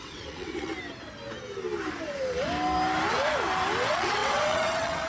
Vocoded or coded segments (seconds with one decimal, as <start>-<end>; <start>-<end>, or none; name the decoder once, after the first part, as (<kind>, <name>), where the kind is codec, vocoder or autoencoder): 0.0-0.7 (vocoder, WaveNeXt); 3.8-5.1